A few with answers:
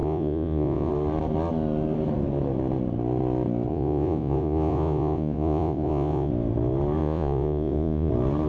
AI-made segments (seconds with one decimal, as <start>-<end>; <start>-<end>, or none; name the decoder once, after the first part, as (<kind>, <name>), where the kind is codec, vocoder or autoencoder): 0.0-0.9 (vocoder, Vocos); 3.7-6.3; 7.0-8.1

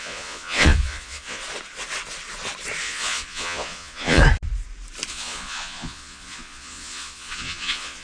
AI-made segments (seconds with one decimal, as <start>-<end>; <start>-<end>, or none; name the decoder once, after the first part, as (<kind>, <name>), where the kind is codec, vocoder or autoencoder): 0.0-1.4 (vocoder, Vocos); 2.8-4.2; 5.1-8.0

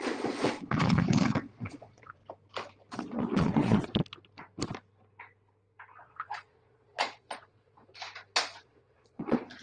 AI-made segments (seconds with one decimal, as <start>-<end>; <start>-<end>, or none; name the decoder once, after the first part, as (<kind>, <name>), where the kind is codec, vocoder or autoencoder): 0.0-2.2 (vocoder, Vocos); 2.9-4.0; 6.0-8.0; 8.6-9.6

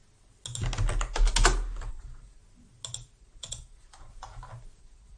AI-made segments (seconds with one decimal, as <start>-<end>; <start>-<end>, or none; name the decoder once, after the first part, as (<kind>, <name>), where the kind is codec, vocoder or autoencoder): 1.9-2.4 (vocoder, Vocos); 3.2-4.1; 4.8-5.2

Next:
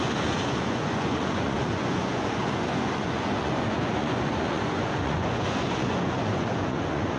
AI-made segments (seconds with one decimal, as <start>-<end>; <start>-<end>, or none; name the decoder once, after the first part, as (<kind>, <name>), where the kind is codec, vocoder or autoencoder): 0.0-7.2 (vocoder, Vocos)

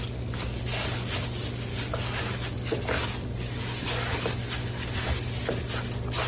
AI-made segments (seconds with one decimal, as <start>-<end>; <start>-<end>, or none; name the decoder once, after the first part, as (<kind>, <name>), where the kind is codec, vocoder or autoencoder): none

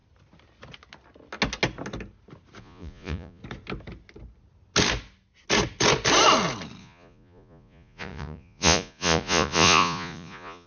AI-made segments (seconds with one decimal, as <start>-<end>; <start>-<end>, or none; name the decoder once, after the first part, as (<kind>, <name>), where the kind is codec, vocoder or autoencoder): 2.6-3.4 (vocoder, Vocos); 6.8-10.7